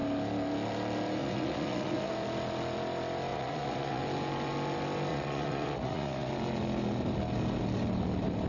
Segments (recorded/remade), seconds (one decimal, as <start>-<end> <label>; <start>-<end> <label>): 0.0-1.2 recorded; 1.2-2.1 remade; 2.1-3.3 recorded; 3.3-4.0 remade; 4.0-5.1 recorded; 5.1-6.3 remade; 6.3-8.5 recorded